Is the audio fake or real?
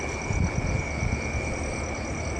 real